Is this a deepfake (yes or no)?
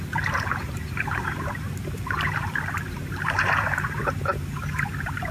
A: yes